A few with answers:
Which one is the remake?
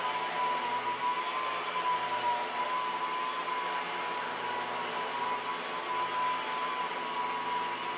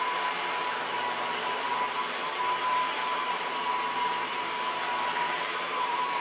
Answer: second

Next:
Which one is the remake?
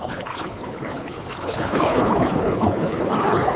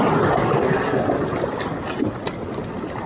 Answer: first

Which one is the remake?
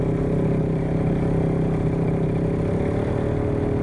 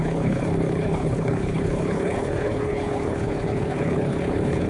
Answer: second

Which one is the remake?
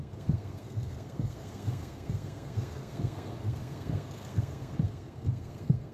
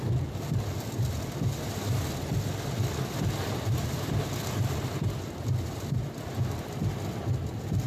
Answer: first